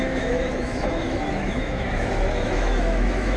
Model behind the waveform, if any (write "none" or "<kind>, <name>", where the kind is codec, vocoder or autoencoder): autoencoder, DAC-VAE